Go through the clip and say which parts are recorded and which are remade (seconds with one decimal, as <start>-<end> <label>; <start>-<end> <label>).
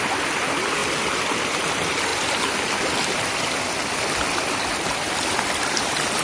0.0-6.2 recorded